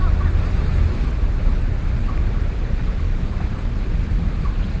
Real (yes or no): yes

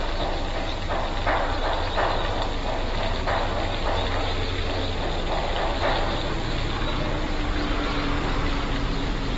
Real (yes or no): yes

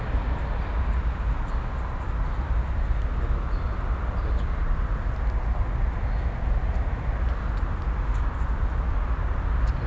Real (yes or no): yes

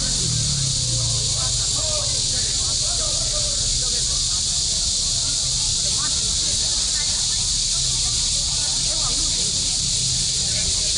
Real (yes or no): yes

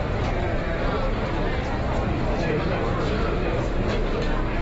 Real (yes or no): no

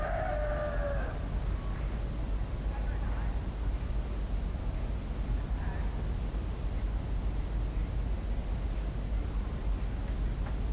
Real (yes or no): yes